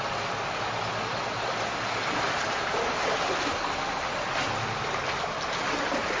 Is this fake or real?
real